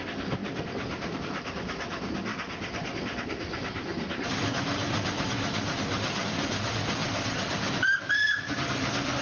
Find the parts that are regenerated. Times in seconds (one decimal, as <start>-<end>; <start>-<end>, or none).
0.0-4.8; 6.2-7.0; 8.5-9.2